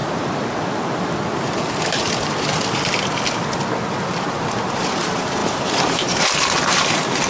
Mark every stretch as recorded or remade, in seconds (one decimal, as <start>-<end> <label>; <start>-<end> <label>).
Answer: 0.0-3.9 recorded; 3.9-7.3 remade